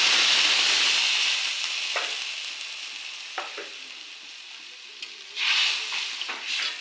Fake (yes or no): no